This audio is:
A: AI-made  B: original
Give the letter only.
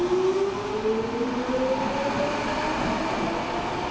B